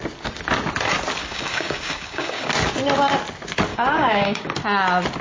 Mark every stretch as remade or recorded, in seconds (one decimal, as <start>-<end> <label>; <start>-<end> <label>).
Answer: 0.0-1.2 recorded; 1.2-2.5 remade; 2.5-3.7 recorded; 3.7-4.5 remade; 4.5-5.2 recorded